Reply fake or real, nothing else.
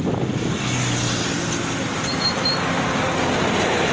real